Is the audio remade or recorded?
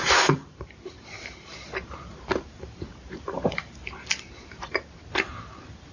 remade